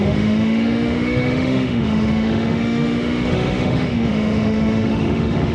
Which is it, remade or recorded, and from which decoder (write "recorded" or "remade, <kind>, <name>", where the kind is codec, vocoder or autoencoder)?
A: remade, autoencoder, DAC-VAE